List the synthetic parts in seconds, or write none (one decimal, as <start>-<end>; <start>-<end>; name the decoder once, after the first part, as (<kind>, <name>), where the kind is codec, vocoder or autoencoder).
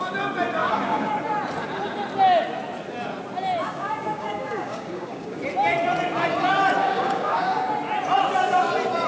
0.6-1.1 (codec, DAC); 3.6-5.4; 6.8-7.7